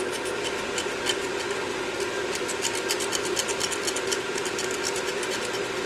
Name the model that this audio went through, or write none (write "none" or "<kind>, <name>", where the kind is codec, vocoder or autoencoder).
none